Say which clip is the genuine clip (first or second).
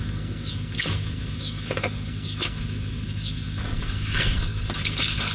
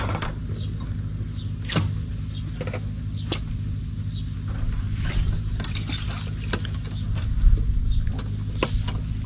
second